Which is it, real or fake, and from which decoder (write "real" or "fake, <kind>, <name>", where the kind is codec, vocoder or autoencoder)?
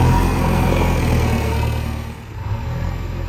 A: fake, codec, SNAC